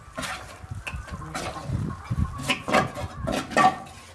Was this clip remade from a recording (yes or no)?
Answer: no